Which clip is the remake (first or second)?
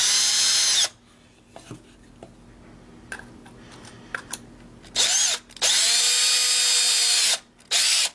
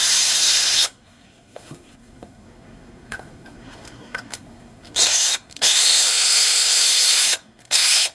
second